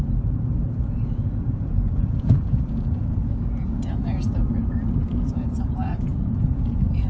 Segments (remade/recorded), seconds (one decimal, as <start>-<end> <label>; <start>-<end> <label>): 0.0-4.4 remade; 4.4-5.1 recorded; 5.1-7.1 remade